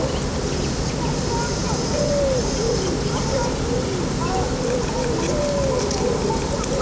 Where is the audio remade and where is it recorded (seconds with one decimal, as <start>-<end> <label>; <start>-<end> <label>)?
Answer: 0.0-6.8 recorded